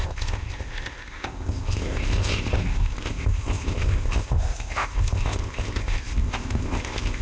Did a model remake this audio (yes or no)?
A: yes